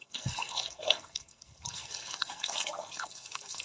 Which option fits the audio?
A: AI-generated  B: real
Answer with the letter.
A